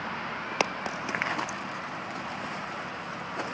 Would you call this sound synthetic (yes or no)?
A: no